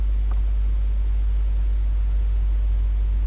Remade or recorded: recorded